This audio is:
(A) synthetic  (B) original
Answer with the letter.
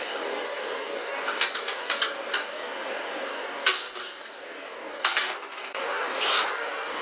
A